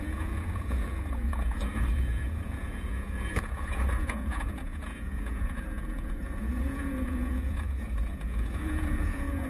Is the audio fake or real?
fake